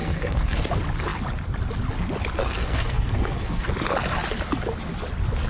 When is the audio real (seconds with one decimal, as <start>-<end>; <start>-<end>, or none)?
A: 0.7-2.4; 3.7-5.5